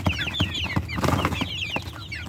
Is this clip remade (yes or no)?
no